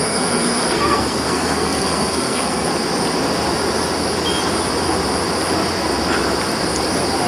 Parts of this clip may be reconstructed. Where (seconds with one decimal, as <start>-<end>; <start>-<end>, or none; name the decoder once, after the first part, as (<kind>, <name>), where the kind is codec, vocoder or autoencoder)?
0.0-2.7 (codec, SNAC)